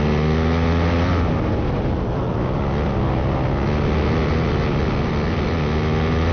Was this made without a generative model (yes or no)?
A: yes